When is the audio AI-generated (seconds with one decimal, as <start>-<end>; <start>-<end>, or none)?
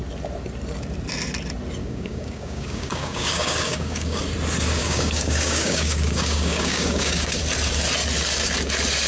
1.8-4.2; 4.8-7.4